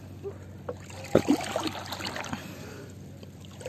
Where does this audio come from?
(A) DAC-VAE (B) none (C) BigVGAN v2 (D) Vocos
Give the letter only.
B